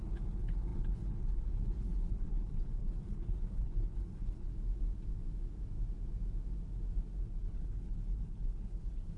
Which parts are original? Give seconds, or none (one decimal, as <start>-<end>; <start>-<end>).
4.5-7.2